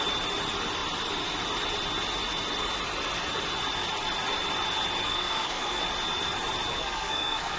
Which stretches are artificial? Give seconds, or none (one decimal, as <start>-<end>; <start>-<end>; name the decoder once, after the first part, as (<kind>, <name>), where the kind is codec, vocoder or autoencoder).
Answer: 5.1-5.8 (codec, SNAC); 6.7-7.6